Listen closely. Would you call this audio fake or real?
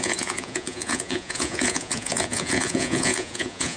fake